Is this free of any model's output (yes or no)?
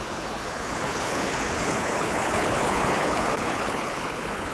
no